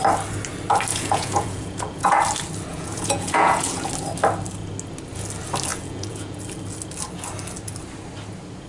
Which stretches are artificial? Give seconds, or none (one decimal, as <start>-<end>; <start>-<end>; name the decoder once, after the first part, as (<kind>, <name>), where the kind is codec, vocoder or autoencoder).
0.9-2.2 (vocoder, Vocos); 2.7-3.9; 5.7-6.4

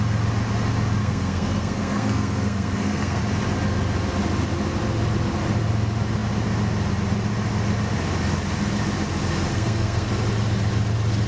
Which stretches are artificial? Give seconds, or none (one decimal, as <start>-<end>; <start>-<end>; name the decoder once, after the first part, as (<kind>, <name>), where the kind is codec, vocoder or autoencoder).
1.0-3.2 (codec, SNAC); 9.5-10.1

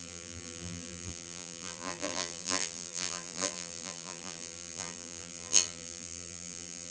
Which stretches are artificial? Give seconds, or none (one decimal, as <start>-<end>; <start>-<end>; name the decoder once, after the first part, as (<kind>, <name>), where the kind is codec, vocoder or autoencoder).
0.0-6.9 (vocoder, BigVGAN v2)

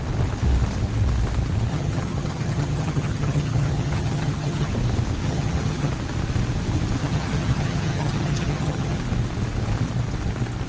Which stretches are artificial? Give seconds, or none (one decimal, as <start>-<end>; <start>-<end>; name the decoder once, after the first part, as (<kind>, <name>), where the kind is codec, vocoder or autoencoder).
1.7-4.7 (vocoder, HiFi-GAN); 5.2-5.9; 7.0-9.0